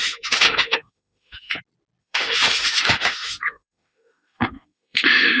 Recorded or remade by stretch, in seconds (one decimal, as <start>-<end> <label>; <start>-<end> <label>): 0.0-1.6 remade; 1.6-2.0 recorded; 2.0-5.4 remade